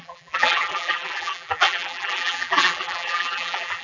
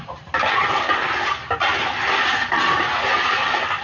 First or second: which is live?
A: second